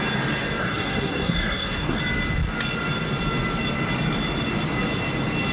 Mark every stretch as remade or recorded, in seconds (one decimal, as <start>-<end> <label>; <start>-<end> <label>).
0.0-0.6 recorded; 0.6-2.0 remade; 2.0-5.5 recorded